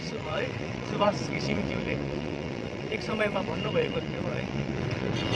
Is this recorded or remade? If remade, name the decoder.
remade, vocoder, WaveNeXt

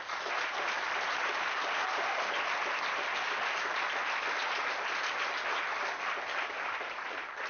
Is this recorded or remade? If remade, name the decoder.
recorded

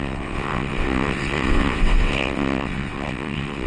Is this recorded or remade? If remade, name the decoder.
remade, vocoder, WaveNeXt